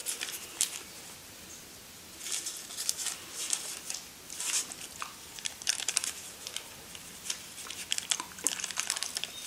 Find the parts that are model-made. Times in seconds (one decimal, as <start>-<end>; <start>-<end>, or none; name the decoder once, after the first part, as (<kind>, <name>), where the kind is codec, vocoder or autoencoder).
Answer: 0.0-1.0 (vocoder, BigVGAN v2); 5.1-8.8

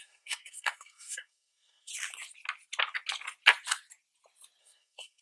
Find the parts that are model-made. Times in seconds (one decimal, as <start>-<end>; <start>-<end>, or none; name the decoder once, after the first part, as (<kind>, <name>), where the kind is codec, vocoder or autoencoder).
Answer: 0.0-1.9 (codec, SNAC); 4.6-5.2

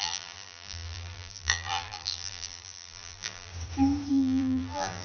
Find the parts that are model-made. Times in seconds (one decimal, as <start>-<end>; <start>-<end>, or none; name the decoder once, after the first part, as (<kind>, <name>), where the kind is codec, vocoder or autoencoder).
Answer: 0.0-3.5 (vocoder, BigVGAN v2); 4.1-5.0

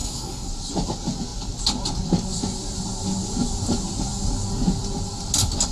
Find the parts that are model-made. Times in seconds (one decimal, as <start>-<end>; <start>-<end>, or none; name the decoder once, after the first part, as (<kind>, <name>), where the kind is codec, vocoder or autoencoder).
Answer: 0.0-0.5 (codec, SNAC)

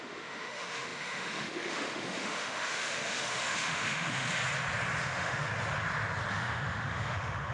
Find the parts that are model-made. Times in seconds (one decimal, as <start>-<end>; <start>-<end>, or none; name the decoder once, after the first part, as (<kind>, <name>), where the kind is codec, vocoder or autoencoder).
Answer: 0.0-4.4 (autoencoder, DAC-VAE); 5.0-5.5; 6.3-7.5

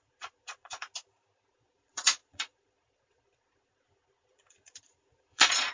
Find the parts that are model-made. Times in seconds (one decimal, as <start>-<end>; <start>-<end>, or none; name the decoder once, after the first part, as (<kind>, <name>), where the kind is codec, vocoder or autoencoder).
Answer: 0.0-0.9 (vocoder, Vocos); 1.5-5.7

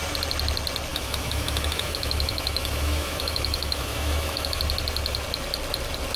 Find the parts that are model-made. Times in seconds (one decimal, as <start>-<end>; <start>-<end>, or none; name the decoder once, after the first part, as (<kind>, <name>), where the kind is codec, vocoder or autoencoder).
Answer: 0.9-4.6 (autoencoder, DAC-VAE)

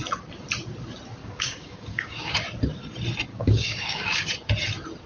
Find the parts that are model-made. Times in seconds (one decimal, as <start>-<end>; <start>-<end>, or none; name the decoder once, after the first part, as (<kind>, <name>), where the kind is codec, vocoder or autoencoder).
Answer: 1.2-2.4 (codec, DAC); 3.3-4.3